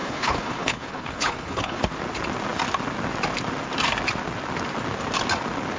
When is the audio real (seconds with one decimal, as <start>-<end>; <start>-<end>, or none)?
1.8-5.8